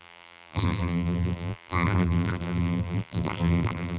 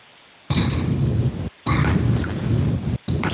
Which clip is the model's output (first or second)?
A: first